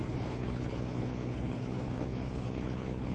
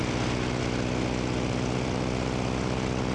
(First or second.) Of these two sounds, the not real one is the first